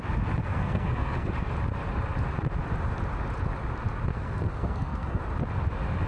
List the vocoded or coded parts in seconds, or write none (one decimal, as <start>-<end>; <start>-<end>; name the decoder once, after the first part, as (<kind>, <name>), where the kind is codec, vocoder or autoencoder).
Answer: 0.4-1.5 (codec, SNAC); 4.1-5.2